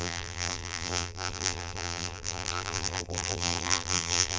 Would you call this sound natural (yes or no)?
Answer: no